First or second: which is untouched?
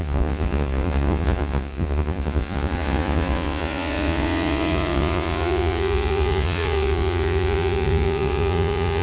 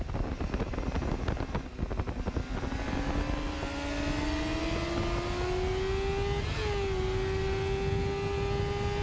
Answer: second